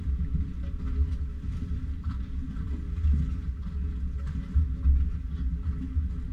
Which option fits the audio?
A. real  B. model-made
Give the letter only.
A